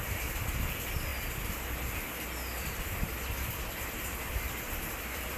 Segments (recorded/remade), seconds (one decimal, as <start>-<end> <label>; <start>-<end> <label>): 0.0-1.1 remade; 1.1-4.0 recorded; 4.0-5.4 remade